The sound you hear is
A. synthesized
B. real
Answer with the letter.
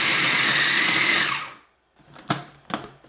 A